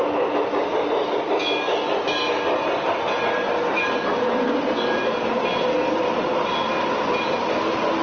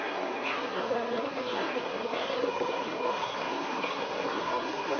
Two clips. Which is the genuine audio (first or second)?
first